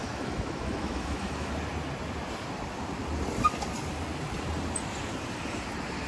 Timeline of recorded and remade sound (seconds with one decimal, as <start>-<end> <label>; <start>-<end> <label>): 0.0-1.5 remade; 1.5-6.1 recorded